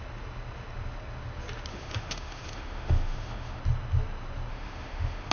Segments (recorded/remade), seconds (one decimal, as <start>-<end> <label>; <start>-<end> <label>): 0.0-1.7 recorded; 1.7-3.6 remade; 3.6-4.5 recorded; 4.5-5.3 remade